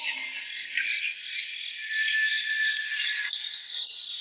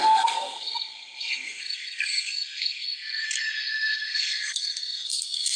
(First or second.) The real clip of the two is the first